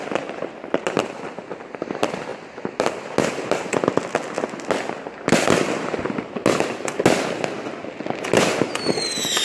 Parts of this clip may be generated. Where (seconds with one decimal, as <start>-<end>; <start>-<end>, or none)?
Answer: none